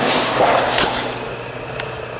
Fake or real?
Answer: real